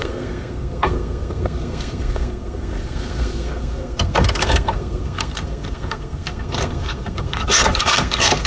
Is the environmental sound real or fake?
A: fake